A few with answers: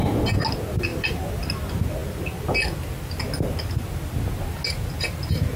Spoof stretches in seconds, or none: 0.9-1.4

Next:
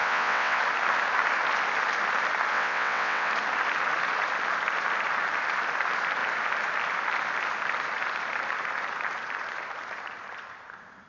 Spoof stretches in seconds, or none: 0.0-0.6; 2.5-3.3

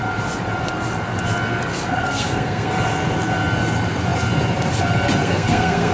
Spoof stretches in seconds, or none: 1.7-2.7; 5.2-5.9

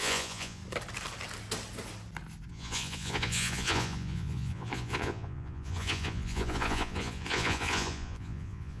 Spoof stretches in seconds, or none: 0.0-0.6; 2.5-8.8

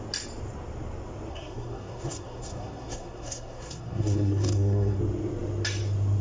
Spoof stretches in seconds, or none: 1.3-5.0

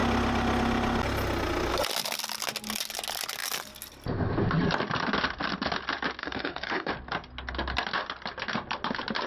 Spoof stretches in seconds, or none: 6.2-6.9

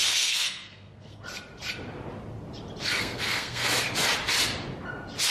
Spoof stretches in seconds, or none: 0.0-1.2; 2.8-3.7

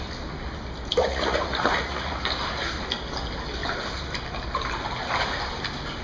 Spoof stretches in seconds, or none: 1.0-2.2